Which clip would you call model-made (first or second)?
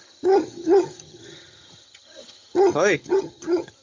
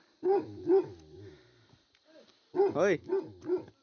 first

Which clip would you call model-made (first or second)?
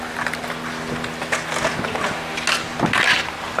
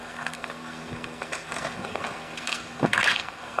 second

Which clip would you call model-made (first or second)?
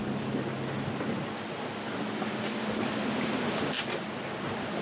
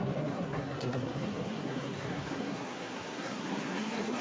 second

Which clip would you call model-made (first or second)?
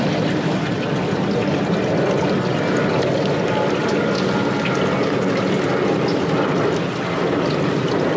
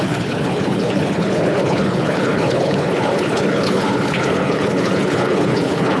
second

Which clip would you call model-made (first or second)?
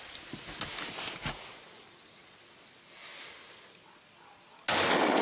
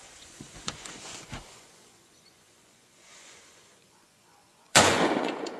second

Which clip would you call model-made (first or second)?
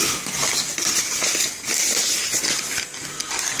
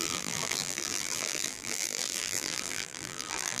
second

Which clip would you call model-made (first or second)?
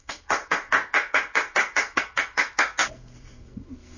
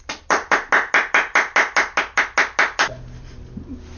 first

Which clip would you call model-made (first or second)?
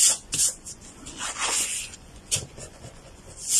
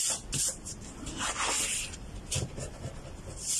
first